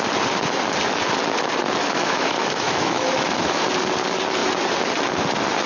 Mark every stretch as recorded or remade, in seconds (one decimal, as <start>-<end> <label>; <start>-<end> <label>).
0.0-1.8 recorded; 1.8-3.5 remade; 3.5-5.7 recorded